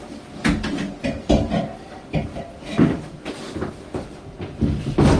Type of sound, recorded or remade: recorded